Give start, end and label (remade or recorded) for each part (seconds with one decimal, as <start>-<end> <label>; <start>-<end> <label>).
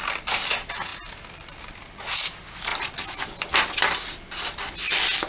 0.0-5.3 recorded